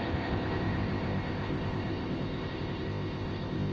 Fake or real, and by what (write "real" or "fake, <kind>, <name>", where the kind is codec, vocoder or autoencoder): fake, codec, ZipCodec